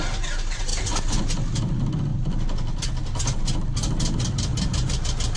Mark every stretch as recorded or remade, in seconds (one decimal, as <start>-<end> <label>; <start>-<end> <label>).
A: 0.0-5.4 recorded